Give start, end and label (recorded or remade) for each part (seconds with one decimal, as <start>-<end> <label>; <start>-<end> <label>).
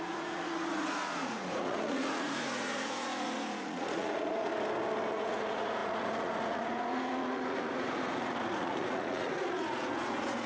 0.0-4.5 remade; 4.5-5.1 recorded; 5.1-10.5 remade